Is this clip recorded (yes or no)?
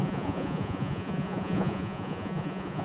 no